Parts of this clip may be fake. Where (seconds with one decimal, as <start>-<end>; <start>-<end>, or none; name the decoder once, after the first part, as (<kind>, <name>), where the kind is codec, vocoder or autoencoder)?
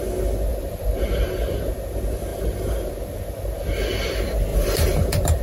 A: 0.5-1.7 (vocoder, BigVGAN v2); 2.3-2.9; 4.5-5.4